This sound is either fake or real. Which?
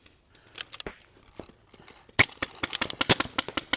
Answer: real